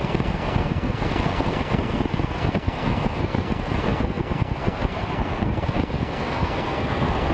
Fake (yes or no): yes